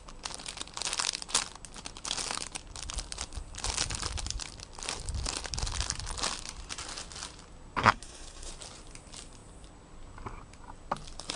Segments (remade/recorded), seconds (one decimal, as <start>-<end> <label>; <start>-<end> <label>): 0.0-7.8 recorded; 7.8-8.5 remade; 8.5-11.4 recorded